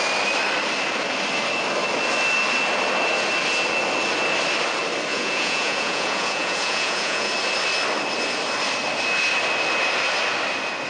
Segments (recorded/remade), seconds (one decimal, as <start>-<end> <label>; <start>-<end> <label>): 0.0-5.1 recorded; 5.1-7.3 remade; 7.3-10.9 recorded